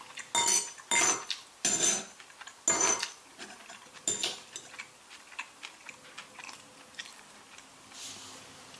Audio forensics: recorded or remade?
recorded